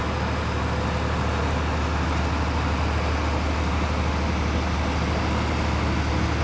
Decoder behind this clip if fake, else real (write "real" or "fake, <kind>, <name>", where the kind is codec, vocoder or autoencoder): real